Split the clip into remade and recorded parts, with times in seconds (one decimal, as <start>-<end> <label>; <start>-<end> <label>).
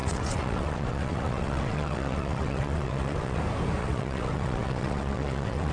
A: 0.0-3.4 remade; 3.4-3.8 recorded; 3.8-5.7 remade